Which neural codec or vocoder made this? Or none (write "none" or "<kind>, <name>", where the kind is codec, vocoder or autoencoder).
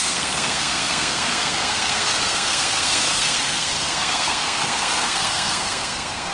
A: codec, SNAC